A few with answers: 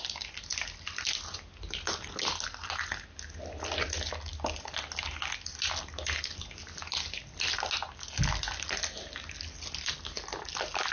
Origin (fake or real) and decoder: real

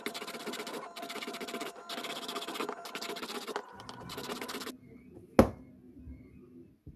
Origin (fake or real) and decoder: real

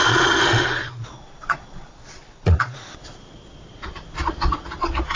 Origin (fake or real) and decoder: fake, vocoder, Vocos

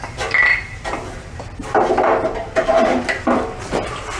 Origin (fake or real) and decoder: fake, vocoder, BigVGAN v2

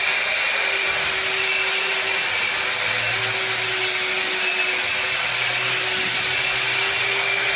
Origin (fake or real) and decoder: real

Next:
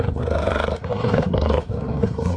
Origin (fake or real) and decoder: fake, codec, SNAC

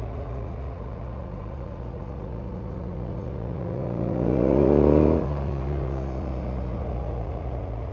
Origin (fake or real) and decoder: fake, vocoder, Vocos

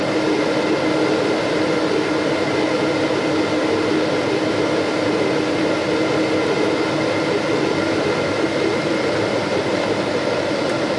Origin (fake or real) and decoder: real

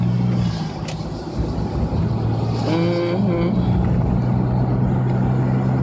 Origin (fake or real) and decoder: real